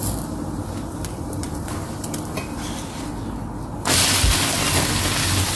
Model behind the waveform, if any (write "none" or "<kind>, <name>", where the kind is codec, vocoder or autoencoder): none